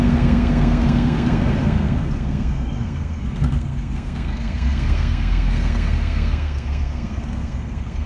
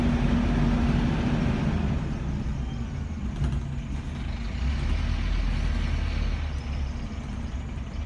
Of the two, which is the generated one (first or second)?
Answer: first